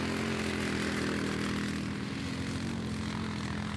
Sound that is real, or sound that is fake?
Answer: real